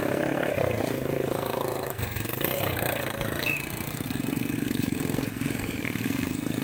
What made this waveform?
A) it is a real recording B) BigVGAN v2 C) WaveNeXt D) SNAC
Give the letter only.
D